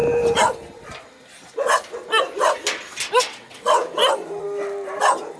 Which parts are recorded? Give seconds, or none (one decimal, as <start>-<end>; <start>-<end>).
0.0-3.2; 4.0-5.4